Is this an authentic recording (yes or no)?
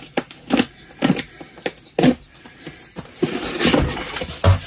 yes